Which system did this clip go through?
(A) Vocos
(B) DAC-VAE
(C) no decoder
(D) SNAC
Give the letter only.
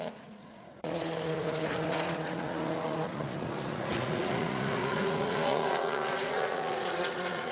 A